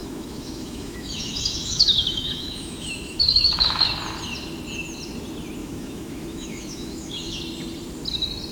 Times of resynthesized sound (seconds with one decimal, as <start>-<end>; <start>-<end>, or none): 0.0-3.9; 5.6-7.4